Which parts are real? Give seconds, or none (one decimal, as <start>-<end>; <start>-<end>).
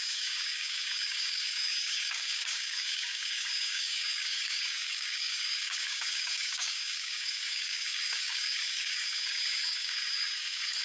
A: none